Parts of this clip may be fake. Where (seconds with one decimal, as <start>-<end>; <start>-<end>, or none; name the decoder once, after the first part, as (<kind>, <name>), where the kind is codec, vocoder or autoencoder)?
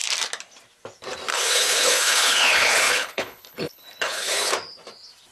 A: 1.3-4.5 (codec, HILCodec)